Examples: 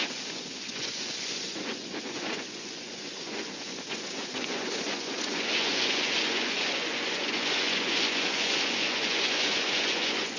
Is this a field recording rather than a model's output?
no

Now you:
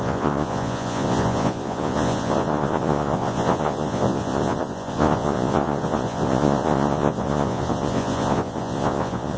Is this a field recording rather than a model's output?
no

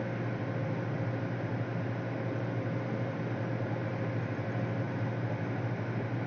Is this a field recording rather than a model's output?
yes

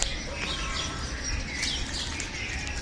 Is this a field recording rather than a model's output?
yes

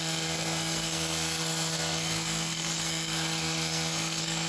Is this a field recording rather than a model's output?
no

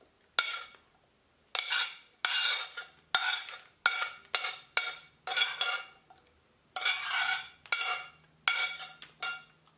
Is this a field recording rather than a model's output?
yes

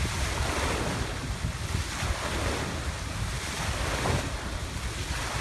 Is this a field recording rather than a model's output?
yes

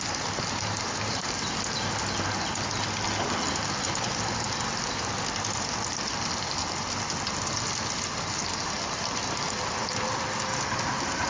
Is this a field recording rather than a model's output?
yes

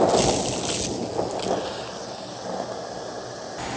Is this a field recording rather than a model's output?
yes